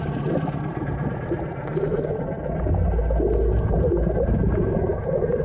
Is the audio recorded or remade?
recorded